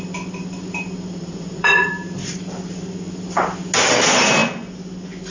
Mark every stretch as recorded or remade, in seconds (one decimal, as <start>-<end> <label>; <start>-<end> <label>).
0.0-1.2 recorded; 1.2-1.9 remade; 1.9-5.3 recorded